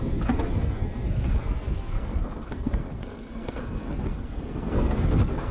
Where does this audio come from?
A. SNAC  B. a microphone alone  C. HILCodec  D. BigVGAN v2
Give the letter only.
A